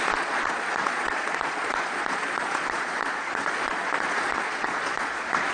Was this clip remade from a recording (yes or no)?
yes